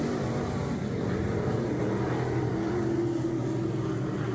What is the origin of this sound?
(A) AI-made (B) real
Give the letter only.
B